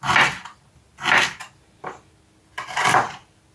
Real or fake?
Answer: real